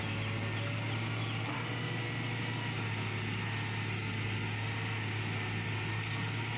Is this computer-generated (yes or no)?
no